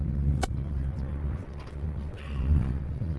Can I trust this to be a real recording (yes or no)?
no